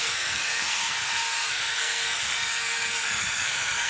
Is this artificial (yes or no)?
yes